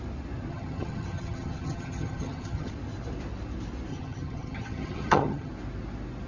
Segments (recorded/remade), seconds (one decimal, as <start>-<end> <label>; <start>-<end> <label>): 0.0-0.5 recorded; 0.5-2.7 remade; 2.7-3.9 recorded; 3.9-5.5 remade; 5.5-6.3 recorded